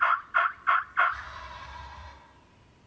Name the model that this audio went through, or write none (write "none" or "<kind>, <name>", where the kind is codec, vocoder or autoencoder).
none